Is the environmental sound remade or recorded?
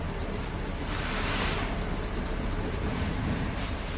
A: remade